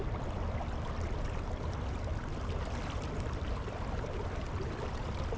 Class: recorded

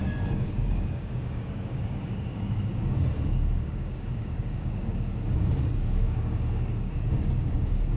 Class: remade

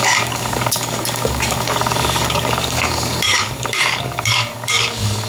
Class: remade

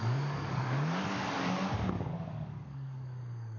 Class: remade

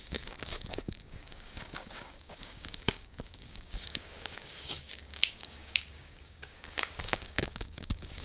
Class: remade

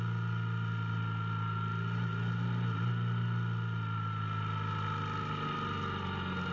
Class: recorded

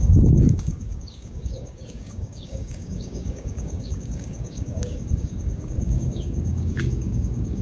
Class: remade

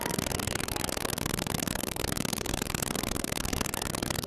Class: remade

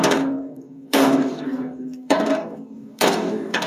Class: remade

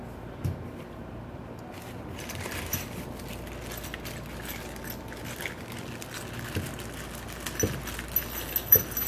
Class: recorded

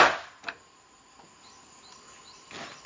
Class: recorded